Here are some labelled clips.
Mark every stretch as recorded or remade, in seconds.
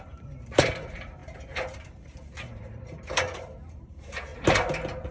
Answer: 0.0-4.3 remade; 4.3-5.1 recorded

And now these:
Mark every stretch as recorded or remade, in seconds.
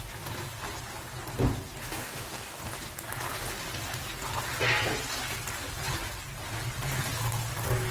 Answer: 0.0-1.9 recorded; 1.9-2.6 remade; 2.6-7.9 recorded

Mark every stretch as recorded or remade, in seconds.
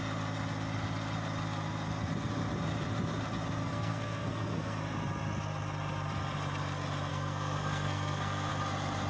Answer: 0.0-3.6 recorded; 3.6-4.8 remade; 4.8-7.1 recorded; 7.1-8.5 remade; 8.5-9.1 recorded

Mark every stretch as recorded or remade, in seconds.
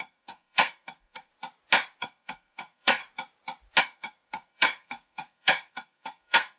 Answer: 0.0-1.3 remade; 1.3-2.0 recorded; 2.0-3.0 remade; 3.0-3.8 recorded; 3.8-6.6 remade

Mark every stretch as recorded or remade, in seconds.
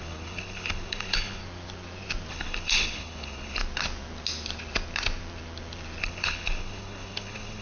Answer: 0.0-1.4 remade; 1.4-2.3 recorded; 2.3-3.6 remade; 3.6-6.0 recorded; 6.0-7.6 remade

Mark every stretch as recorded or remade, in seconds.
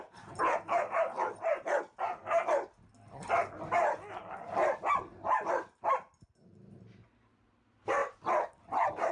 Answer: 0.0-1.5 remade; 1.5-6.1 recorded; 6.1-9.1 remade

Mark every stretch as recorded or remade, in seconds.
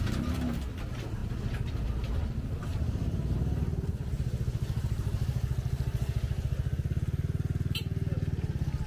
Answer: 0.0-2.7 recorded; 2.7-6.4 remade; 6.4-8.9 recorded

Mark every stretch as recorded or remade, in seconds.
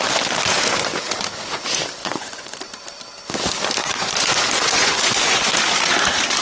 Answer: 0.0-2.0 recorded; 2.0-2.6 remade; 2.6-3.8 recorded; 3.8-5.6 remade; 5.6-6.4 recorded